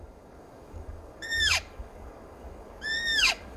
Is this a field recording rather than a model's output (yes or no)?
no